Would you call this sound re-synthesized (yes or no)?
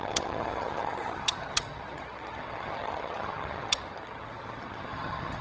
yes